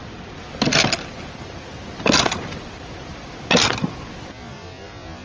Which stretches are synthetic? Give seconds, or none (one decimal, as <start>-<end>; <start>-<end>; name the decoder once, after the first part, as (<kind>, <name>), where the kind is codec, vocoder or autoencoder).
none